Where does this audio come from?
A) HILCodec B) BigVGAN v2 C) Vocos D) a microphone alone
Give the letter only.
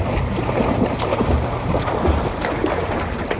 B